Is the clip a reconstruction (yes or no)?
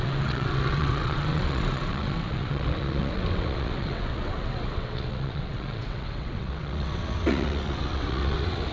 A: yes